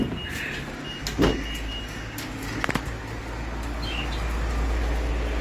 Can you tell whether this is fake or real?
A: real